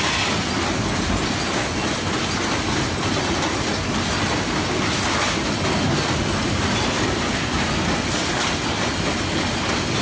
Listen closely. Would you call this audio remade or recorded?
recorded